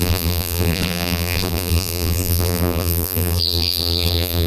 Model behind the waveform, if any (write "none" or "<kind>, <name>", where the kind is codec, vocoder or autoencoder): vocoder, BigVGAN v2